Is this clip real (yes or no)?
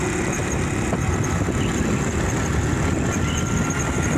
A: yes